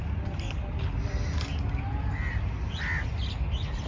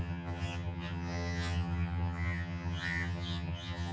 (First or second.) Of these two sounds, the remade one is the second